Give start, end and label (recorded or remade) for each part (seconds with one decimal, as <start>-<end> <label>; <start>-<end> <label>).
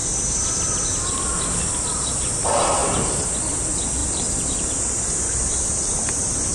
0.0-4.0 recorded; 4.0-6.5 remade